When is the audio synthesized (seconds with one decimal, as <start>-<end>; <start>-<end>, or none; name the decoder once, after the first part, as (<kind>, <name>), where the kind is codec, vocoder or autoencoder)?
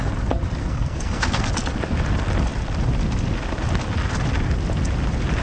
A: 0.6-1.5 (codec, SNAC)